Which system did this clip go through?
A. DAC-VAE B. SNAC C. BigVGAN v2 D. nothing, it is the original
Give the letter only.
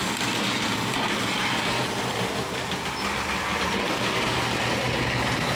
D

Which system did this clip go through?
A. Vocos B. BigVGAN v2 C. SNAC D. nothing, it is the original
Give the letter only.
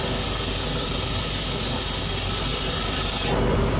D